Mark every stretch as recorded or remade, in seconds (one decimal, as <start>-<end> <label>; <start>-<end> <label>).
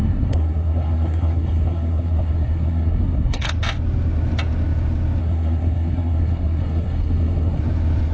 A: 0.0-3.5 remade; 3.5-5.2 recorded; 5.2-7.6 remade; 7.6-8.1 recorded